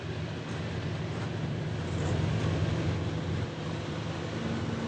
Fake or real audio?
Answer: real